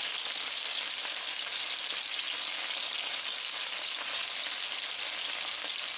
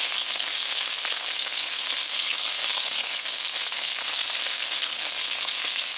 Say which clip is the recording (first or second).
first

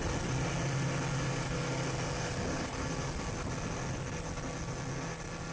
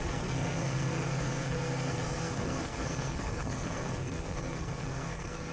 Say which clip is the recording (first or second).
first